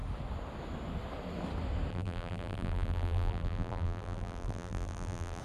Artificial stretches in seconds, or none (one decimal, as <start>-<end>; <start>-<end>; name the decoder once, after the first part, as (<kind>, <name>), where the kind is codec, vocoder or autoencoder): 1.9-5.4 (vocoder, BigVGAN v2)